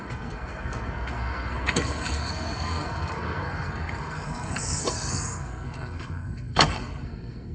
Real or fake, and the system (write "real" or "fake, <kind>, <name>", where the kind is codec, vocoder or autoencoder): fake, codec, SNAC